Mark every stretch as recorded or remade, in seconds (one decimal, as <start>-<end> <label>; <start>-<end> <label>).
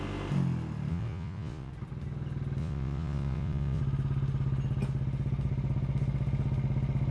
0.0-0.9 recorded; 0.9-1.7 remade; 1.7-2.6 recorded; 2.6-3.8 remade; 3.8-7.1 recorded